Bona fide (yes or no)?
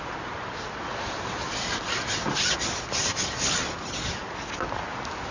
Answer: yes